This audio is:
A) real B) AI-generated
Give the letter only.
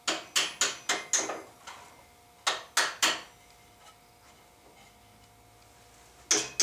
A